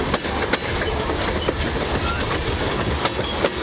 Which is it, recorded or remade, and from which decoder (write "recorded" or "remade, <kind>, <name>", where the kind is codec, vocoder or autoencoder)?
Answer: recorded